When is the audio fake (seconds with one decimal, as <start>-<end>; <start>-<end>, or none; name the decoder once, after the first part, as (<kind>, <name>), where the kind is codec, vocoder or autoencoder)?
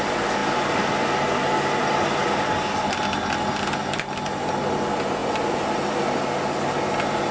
none